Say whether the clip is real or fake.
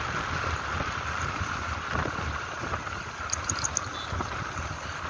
real